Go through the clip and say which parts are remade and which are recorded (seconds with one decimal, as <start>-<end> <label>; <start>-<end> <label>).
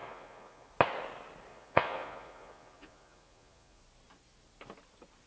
0.0-0.7 remade; 0.7-1.5 recorded; 1.5-3.8 remade; 3.8-5.3 recorded